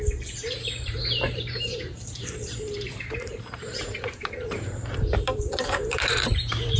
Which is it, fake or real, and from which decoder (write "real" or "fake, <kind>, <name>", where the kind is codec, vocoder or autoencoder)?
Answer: fake, vocoder, BigVGAN v2